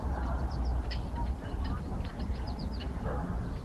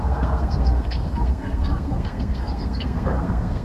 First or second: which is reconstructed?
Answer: second